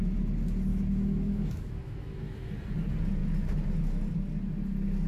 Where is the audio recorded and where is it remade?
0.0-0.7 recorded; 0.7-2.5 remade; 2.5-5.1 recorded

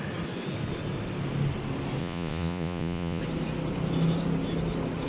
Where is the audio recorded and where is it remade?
0.0-2.0 recorded; 2.0-3.2 remade; 3.2-5.1 recorded

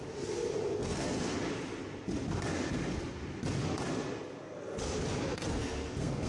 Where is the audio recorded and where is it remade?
0.0-0.8 recorded; 0.8-1.4 remade; 1.4-5.3 recorded; 5.3-6.3 remade

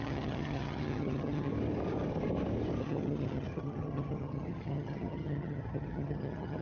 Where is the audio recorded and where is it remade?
0.0-1.5 remade; 1.5-2.8 recorded; 2.8-6.6 remade

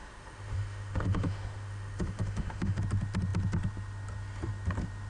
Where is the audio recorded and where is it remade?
0.0-2.8 remade; 2.8-5.1 recorded

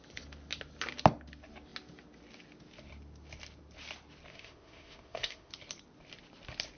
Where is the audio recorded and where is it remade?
0.0-4.3 recorded; 4.3-5.5 remade; 5.5-6.8 recorded

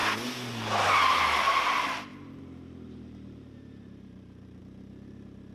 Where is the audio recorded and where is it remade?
0.0-2.1 recorded; 2.1-4.6 remade; 4.6-5.5 recorded